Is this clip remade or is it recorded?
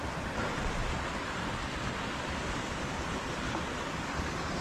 recorded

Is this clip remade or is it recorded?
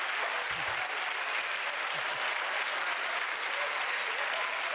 recorded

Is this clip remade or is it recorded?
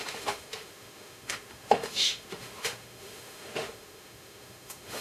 remade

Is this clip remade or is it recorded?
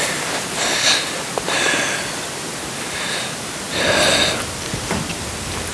recorded